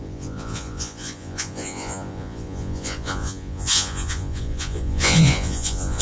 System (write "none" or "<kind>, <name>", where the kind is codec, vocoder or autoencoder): vocoder, Vocos